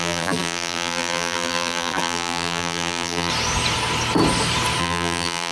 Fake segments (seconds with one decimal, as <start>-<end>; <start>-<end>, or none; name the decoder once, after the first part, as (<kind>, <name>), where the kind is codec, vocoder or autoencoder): 0.0-3.3 (vocoder, BigVGAN v2); 4.8-5.5